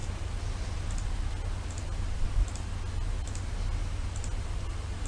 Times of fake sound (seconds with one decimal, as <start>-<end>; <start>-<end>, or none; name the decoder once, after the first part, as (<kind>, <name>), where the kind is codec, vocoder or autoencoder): none